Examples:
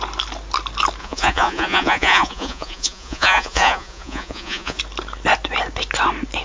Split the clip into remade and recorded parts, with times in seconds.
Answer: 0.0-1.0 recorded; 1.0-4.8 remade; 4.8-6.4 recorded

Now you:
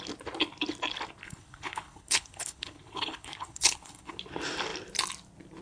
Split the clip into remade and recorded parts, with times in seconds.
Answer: 0.0-1.2 recorded; 1.2-4.2 remade; 4.2-5.6 recorded

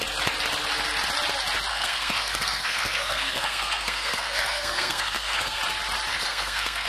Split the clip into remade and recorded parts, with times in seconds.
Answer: 0.0-1.7 recorded; 1.7-5.6 remade; 5.6-6.1 recorded; 6.1-6.9 remade

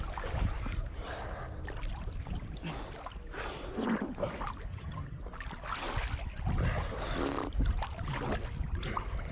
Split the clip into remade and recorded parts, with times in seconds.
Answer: 0.0-4.7 recorded; 4.7-5.2 remade; 5.2-9.3 recorded

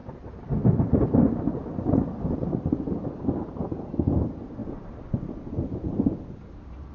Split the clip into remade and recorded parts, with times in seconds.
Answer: 0.0-4.6 recorded; 4.6-6.3 remade; 6.3-6.9 recorded

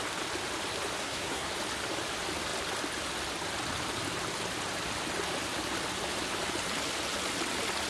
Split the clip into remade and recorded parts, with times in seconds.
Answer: 0.0-1.0 recorded; 1.0-1.5 remade; 1.5-7.9 recorded

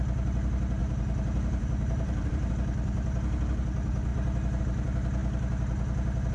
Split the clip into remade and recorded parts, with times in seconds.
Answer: 0.0-0.8 recorded; 0.8-2.5 remade; 2.5-6.3 recorded

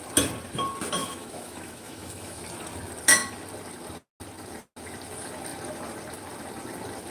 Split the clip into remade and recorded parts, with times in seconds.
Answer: 0.0-1.0 recorded; 1.0-2.4 remade; 2.4-7.1 recorded